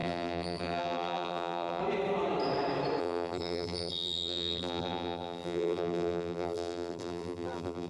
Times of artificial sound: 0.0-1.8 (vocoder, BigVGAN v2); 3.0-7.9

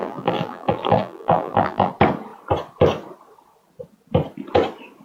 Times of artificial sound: 0.0-1.9 (vocoder, BigVGAN v2)

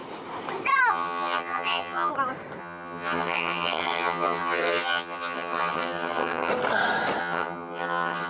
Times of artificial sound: 0.9-2.1 (vocoder, HiFi-GAN); 2.6-6.5; 7.2-8.3